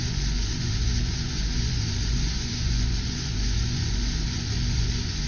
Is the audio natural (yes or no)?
no